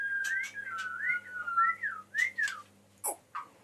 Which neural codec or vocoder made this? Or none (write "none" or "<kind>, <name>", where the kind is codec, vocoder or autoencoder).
none